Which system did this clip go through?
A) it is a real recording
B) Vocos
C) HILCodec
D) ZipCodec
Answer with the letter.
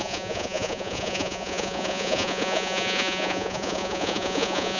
B